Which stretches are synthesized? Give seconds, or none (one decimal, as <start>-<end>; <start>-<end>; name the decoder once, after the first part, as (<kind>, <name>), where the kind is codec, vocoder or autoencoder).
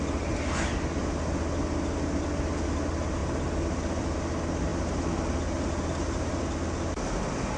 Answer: none